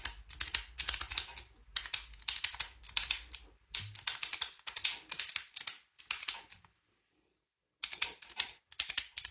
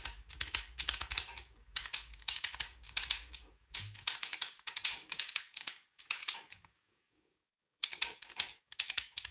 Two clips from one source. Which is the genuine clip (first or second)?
first